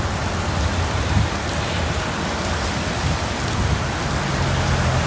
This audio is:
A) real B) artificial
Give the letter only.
A